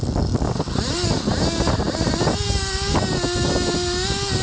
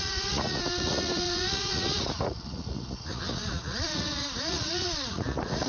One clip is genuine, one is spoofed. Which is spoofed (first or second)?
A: second